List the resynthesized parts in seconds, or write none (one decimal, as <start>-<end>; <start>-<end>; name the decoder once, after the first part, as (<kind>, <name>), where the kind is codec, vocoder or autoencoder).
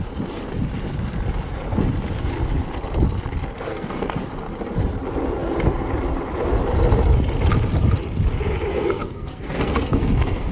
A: 3.7-4.2 (codec, SNAC); 8.7-10.5